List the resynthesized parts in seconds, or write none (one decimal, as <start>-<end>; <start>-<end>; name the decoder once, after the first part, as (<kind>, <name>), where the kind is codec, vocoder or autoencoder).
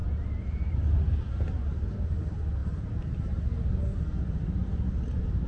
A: none